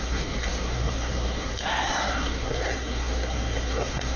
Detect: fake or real fake